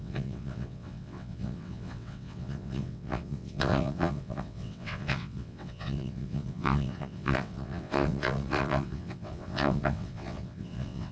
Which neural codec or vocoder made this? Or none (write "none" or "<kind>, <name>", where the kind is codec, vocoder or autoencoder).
vocoder, WaveNeXt